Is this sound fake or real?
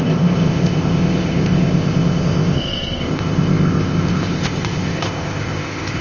fake